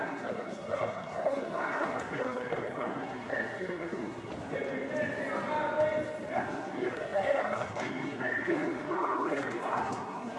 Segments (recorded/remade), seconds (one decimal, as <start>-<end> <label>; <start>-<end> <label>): 0.0-4.3 remade; 4.3-6.3 recorded; 6.3-10.4 remade